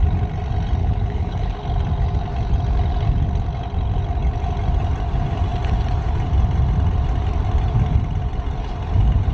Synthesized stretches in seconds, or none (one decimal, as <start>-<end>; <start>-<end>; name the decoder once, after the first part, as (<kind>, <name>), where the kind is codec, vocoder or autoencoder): 0.8-1.5 (codec, HILCodec)